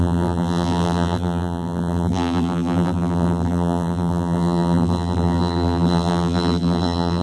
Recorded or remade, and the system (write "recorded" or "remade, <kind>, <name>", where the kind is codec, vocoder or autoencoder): remade, vocoder, BigVGAN v2